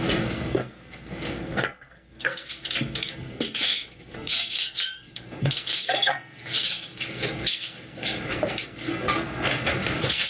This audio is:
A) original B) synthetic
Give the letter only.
B